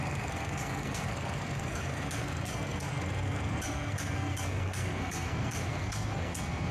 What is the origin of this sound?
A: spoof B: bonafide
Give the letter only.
A